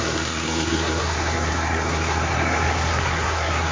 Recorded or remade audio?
remade